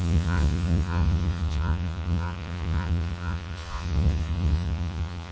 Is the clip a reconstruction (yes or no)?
yes